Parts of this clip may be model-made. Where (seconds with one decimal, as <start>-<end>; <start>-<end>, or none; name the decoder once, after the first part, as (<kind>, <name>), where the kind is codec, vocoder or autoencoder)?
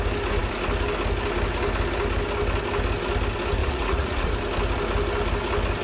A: 3.6-4.3 (vocoder, Vocos)